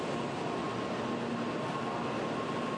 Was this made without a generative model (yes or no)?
yes